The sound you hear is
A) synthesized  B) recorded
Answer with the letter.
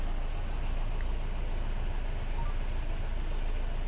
B